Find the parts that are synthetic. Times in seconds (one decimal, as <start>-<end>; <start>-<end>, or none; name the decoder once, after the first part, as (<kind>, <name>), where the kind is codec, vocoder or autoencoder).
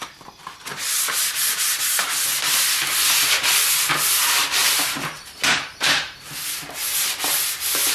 4.6-6.3 (vocoder, BigVGAN v2)